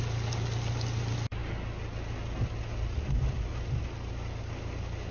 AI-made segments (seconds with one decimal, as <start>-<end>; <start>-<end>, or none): none

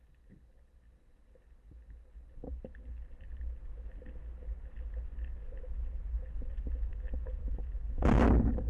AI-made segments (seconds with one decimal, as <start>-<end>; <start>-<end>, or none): none

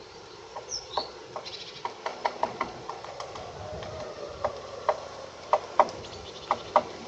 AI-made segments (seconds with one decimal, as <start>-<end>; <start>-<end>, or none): 0.5-1.2; 2.1-3.4